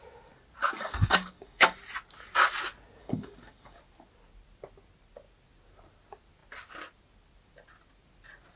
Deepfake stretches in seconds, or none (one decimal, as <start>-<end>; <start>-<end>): 0.6-1.8; 3.0-3.8